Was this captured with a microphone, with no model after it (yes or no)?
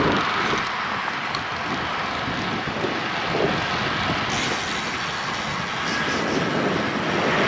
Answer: yes